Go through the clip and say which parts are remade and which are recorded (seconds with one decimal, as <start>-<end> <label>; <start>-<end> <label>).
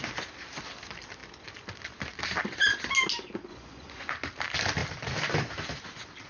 0.0-3.5 recorded; 3.5-4.1 remade; 4.1-6.3 recorded